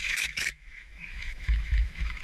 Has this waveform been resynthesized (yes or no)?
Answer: yes